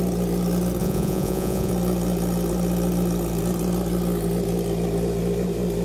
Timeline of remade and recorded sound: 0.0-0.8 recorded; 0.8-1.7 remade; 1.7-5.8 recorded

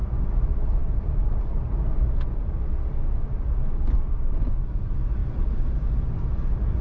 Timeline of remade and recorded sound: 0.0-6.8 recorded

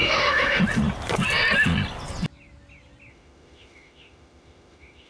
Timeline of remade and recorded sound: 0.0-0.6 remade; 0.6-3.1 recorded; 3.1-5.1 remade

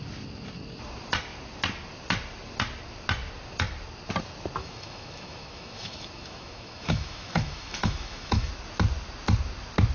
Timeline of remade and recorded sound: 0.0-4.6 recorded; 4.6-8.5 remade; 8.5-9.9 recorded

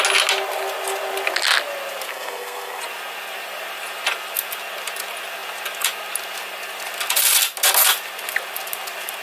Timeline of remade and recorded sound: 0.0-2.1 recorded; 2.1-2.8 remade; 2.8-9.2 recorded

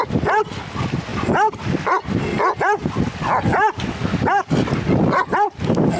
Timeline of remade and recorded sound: 0.0-6.0 recorded

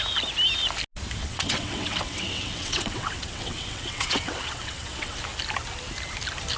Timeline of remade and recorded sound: 0.0-1.2 recorded; 1.2-5.2 remade; 5.2-6.6 recorded